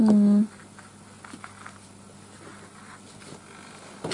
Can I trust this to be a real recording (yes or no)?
yes